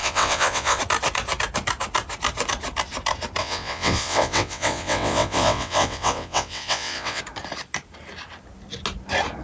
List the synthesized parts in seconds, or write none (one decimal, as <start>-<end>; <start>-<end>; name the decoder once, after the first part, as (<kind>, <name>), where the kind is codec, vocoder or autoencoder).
0.0-0.8 (vocoder, WaveNeXt); 3.4-7.2